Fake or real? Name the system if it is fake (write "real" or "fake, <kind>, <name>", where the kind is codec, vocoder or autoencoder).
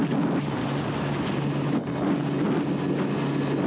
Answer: real